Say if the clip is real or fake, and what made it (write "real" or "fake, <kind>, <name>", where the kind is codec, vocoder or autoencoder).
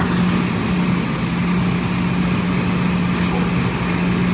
real